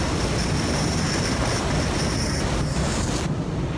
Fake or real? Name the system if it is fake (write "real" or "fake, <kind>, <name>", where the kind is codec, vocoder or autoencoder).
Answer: real